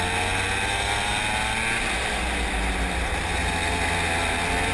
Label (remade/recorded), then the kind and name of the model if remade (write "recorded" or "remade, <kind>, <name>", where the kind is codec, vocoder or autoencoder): recorded